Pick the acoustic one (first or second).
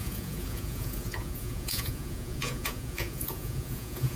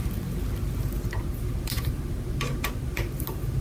second